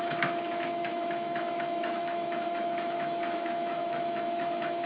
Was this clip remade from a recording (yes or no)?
yes